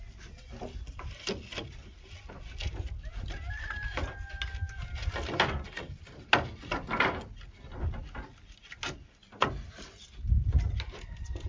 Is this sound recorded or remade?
recorded